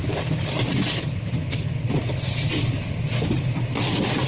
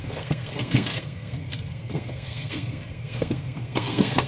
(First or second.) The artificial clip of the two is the second